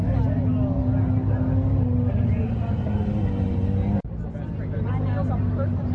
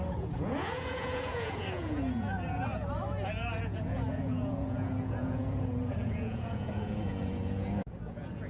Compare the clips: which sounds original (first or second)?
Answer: first